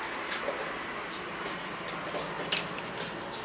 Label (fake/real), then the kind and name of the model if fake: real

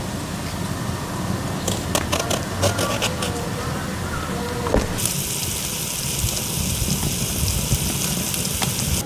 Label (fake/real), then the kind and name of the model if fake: real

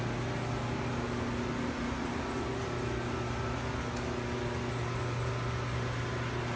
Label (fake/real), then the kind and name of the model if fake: real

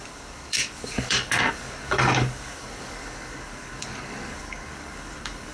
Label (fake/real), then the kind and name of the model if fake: fake, codec, DAC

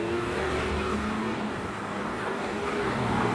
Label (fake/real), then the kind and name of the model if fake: fake, codec, DAC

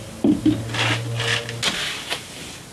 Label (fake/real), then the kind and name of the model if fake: real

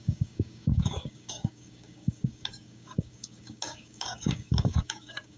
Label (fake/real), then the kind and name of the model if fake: fake, codec, DAC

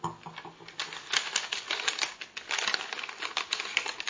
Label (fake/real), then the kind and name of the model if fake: real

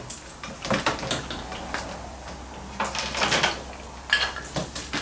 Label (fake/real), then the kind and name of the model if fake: real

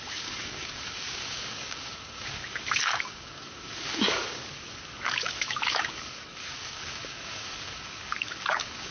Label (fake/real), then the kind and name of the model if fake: fake, codec, DAC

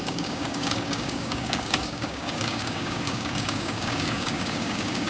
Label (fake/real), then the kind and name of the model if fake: fake, codec, DAC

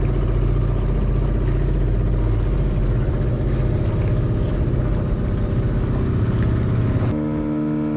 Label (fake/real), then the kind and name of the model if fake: real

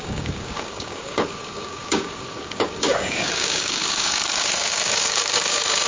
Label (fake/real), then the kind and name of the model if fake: fake, codec, DAC